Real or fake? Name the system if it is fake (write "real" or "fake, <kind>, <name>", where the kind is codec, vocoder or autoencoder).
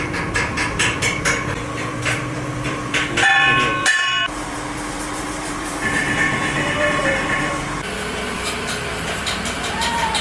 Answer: fake, vocoder, BigVGAN v2